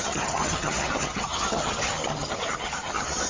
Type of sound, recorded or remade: remade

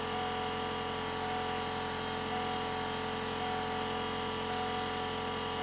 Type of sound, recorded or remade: recorded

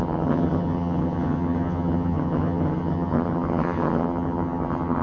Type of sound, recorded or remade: remade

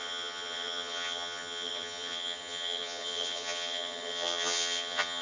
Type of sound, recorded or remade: remade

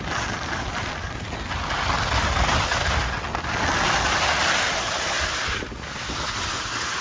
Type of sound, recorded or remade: recorded